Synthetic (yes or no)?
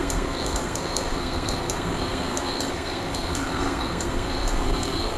yes